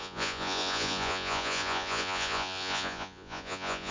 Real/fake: fake